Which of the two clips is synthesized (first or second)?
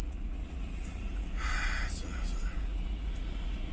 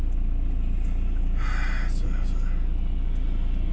first